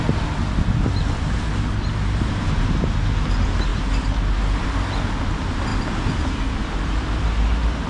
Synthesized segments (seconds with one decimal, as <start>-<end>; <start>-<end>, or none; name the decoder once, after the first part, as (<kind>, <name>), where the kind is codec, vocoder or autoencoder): none